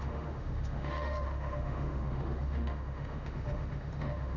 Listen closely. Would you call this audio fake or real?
fake